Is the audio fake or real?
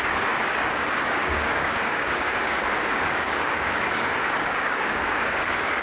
fake